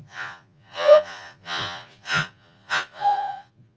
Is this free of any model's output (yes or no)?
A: no